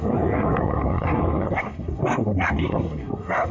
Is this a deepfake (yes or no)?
yes